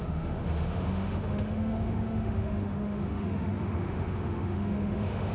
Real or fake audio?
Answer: fake